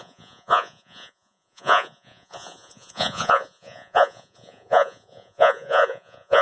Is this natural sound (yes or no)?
no